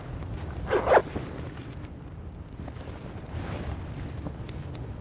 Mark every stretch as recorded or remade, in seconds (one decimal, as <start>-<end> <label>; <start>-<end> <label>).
0.0-5.0 recorded